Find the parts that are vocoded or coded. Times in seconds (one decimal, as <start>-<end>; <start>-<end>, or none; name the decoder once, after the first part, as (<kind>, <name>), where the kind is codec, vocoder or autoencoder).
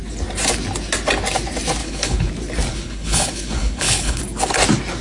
1.8-2.3 (codec, HILCodec); 2.7-4.2